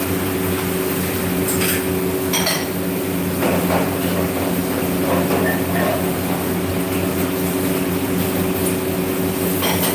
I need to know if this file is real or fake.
real